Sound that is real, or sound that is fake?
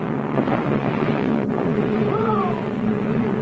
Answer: fake